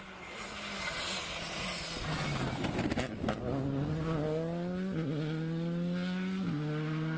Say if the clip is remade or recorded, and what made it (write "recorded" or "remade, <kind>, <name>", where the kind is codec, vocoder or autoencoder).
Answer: recorded